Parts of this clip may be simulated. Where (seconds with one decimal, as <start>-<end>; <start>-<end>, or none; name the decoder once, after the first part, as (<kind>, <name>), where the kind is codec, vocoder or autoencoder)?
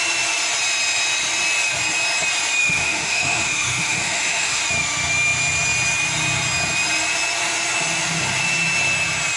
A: 2.6-4.6 (autoencoder, DAC-VAE)